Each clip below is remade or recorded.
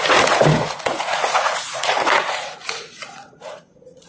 remade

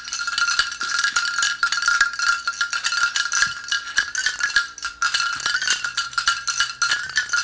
recorded